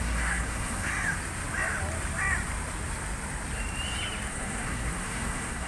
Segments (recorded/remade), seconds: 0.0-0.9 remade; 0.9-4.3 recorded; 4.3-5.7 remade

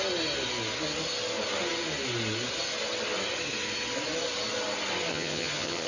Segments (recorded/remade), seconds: 0.0-5.1 recorded; 5.1-5.9 remade

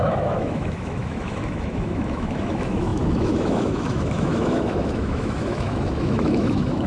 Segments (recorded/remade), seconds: 0.0-6.9 remade